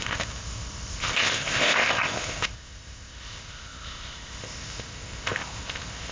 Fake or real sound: fake